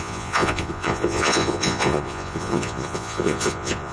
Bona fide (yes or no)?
no